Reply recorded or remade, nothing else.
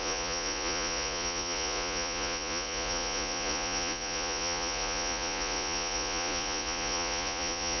remade